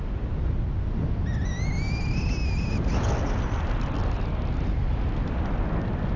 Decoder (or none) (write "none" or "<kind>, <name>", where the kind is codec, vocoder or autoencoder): none